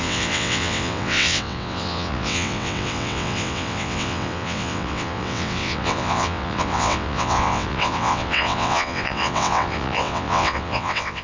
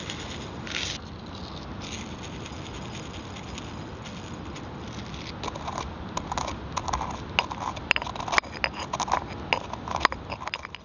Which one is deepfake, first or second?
first